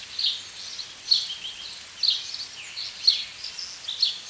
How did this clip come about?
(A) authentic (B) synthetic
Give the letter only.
A